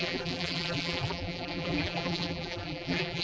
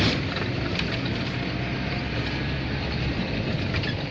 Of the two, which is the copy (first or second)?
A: first